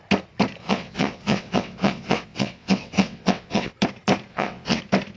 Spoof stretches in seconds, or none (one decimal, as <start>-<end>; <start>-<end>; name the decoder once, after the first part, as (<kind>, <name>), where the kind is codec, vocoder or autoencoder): 0.6-3.7 (vocoder, WaveNeXt); 4.3-4.8